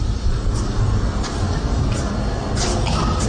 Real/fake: real